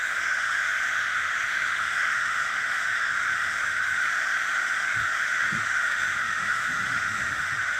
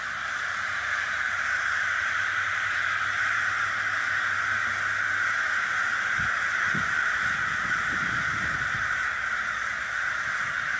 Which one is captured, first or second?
second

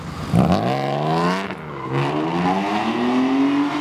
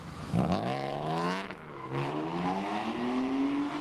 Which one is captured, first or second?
first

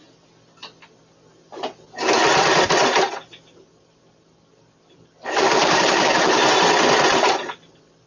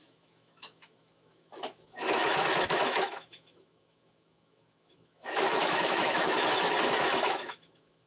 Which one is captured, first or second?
first